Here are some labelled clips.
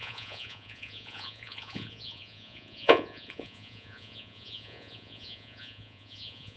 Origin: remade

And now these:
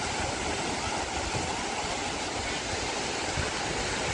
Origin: recorded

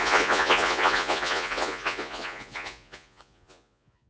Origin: remade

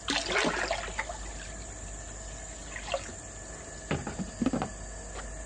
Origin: recorded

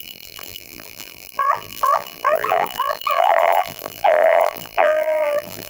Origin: remade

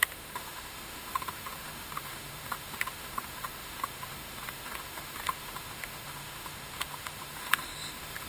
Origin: remade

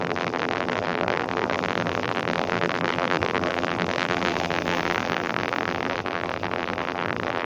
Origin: remade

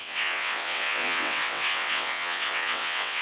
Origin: remade